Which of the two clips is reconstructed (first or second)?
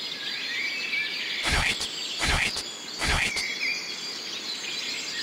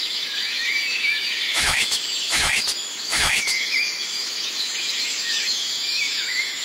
second